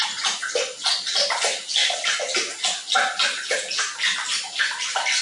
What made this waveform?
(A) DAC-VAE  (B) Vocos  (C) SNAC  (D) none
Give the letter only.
D